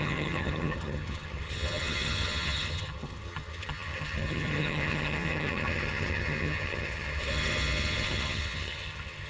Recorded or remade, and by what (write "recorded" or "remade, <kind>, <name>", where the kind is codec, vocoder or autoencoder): remade, vocoder, HiFi-GAN